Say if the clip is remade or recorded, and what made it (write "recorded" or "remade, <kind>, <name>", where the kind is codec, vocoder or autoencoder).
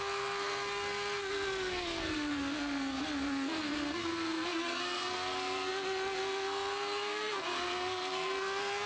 remade, codec, SNAC